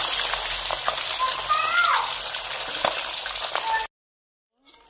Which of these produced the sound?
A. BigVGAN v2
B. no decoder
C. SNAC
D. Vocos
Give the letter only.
B